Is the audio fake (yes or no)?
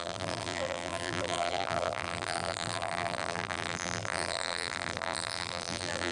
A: yes